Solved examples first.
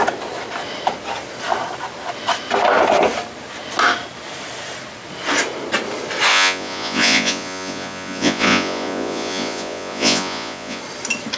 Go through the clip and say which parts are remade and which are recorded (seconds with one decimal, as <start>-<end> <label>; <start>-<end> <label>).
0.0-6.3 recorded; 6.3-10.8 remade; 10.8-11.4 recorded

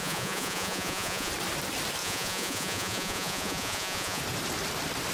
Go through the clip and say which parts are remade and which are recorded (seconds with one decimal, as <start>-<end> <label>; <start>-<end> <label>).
0.0-1.3 remade; 1.3-2.0 recorded; 2.0-4.2 remade; 4.2-5.1 recorded

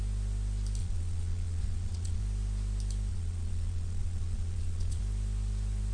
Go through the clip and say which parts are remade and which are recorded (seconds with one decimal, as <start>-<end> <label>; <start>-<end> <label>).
0.0-0.8 recorded; 0.8-2.2 remade; 2.2-3.1 recorded; 3.1-5.0 remade; 5.0-5.9 recorded

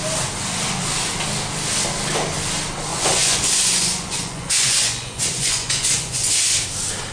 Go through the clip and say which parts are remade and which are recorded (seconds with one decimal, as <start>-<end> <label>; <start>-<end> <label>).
0.0-2.9 recorded; 2.9-6.3 remade; 6.3-7.1 recorded